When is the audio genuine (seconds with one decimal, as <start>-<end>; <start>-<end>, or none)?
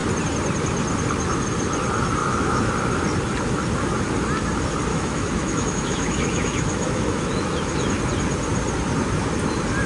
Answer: 0.0-2.2; 2.7-4.9; 8.0-9.9